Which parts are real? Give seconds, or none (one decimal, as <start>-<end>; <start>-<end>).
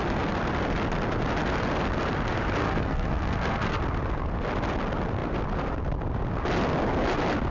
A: 0.0-2.6; 3.8-7.5